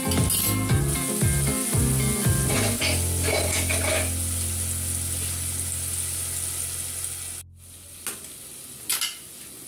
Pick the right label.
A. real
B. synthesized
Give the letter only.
A